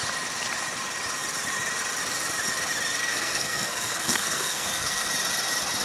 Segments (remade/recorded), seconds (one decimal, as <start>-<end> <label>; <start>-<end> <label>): 0.0-3.0 recorded; 3.0-5.1 remade; 5.1-5.8 recorded